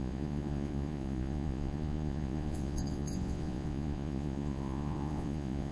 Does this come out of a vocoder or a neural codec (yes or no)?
yes